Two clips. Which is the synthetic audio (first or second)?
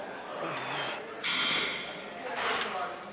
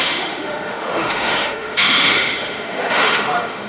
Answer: second